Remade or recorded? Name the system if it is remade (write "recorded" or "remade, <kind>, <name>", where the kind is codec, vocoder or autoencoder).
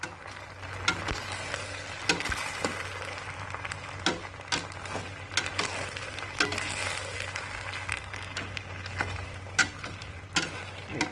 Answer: recorded